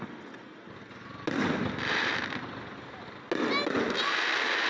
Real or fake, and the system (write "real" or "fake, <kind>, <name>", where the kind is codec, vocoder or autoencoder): real